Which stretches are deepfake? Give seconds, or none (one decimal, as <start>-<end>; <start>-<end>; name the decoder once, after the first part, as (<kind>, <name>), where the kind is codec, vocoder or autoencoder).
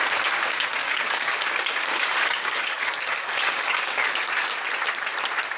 0.8-4.2 (codec, DAC)